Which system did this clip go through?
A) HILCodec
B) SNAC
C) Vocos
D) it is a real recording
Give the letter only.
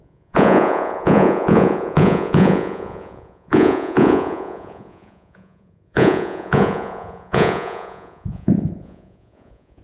C